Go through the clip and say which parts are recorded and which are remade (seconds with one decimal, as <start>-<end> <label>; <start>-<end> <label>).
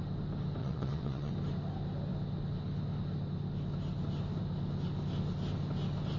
0.0-0.6 recorded; 0.6-1.3 remade; 1.3-6.2 recorded